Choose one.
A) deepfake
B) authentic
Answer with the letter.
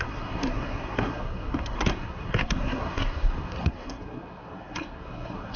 A